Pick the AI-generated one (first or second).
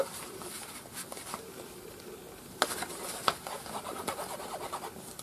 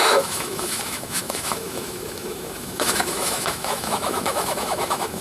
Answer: second